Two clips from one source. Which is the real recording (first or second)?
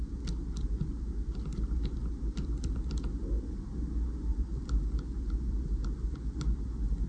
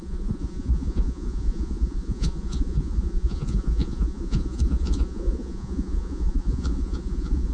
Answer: first